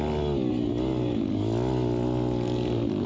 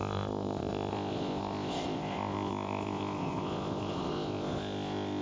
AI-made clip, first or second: second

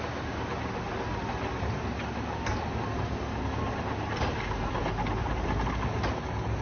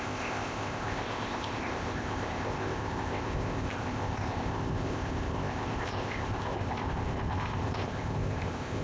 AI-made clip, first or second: second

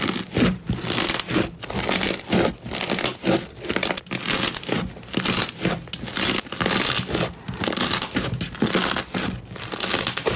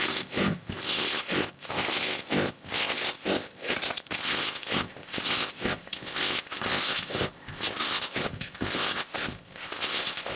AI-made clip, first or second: second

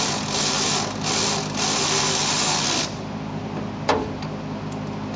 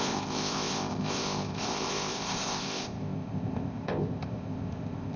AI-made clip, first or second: second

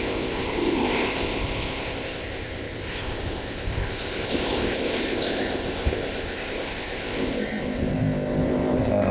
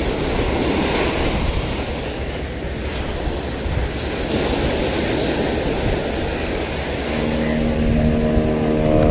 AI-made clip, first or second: first